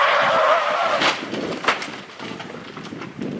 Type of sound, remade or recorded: remade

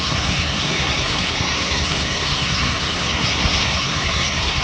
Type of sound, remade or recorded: remade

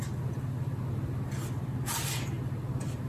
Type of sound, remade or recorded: recorded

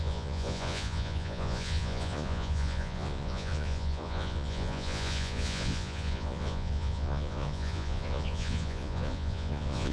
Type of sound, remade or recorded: remade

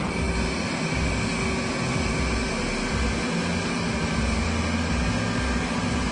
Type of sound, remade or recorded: recorded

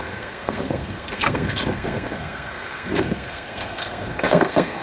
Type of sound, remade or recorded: remade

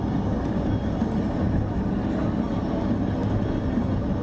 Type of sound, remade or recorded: recorded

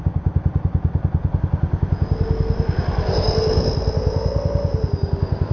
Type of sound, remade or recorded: recorded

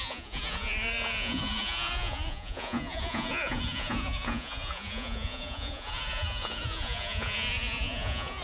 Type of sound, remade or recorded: remade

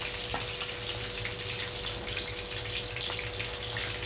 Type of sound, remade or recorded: recorded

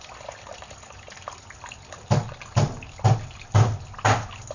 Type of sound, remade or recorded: recorded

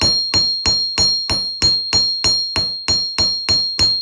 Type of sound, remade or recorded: recorded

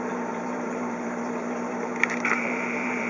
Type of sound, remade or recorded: remade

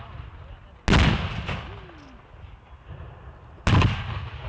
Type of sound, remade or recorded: recorded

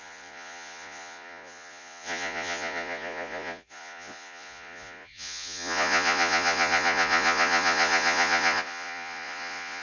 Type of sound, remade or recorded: remade